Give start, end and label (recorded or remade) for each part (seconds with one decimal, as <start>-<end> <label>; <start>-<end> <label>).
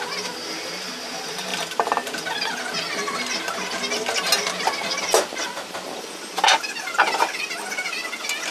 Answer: 0.0-8.5 recorded